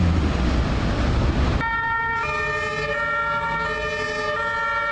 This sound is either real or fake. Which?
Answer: real